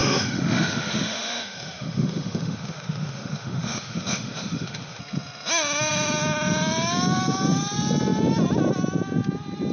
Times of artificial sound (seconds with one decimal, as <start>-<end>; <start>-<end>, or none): 0.0-5.0